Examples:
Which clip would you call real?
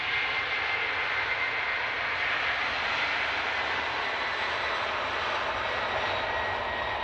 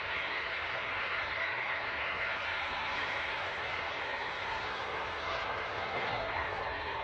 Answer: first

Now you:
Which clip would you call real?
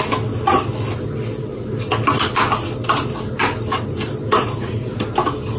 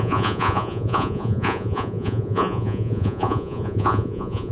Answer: first